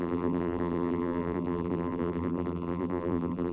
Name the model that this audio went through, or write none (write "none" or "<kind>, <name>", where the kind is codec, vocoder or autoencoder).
vocoder, BigVGAN v2